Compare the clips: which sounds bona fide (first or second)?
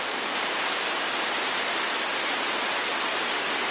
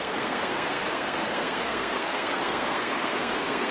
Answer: first